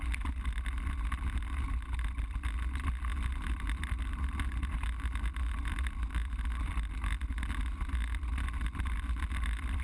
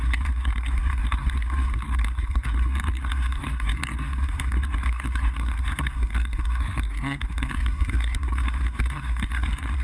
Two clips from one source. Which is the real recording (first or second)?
first